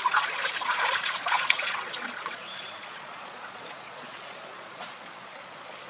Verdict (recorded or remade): remade